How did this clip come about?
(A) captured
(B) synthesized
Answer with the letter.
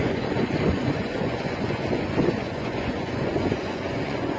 B